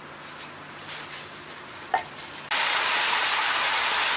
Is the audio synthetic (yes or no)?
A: no